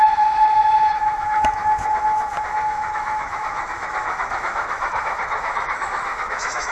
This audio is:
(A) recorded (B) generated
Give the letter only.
B